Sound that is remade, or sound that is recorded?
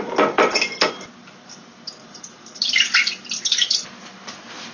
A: recorded